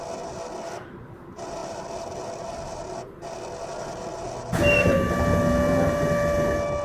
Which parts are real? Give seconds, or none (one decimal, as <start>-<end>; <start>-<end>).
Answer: 0.0-6.8